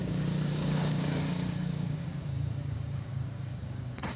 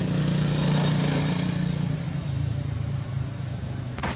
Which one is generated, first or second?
first